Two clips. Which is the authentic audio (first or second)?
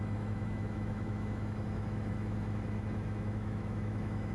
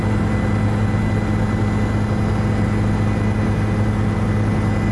second